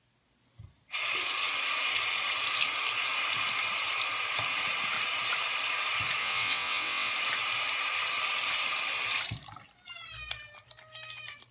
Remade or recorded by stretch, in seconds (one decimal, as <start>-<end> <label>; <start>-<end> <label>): 0.0-6.2 recorded; 6.2-7.1 remade; 7.1-11.5 recorded